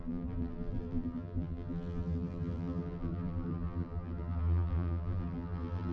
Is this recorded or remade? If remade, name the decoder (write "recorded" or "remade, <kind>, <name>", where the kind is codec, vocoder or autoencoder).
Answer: remade, vocoder, BigVGAN v2